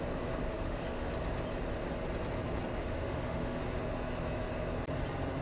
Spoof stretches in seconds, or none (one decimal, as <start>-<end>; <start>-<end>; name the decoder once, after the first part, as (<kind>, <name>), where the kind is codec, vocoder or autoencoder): 0.5-1.1 (autoencoder, DAC-VAE); 2.8-3.6